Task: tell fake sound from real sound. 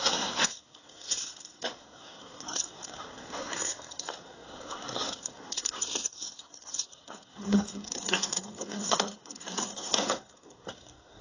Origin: fake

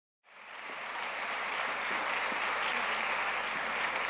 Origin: real